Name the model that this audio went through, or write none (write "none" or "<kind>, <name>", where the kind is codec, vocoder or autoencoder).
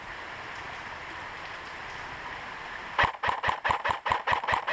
none